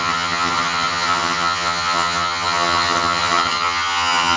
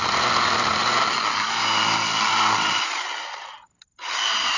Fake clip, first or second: first